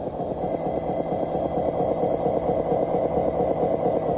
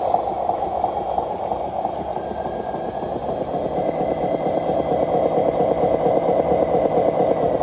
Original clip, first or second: first